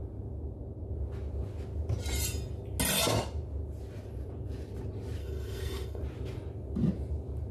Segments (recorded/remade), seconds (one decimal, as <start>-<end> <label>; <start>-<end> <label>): 0.0-5.2 recorded; 5.2-6.0 remade; 6.0-7.5 recorded